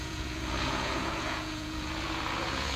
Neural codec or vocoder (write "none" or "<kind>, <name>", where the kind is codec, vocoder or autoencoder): vocoder, Vocos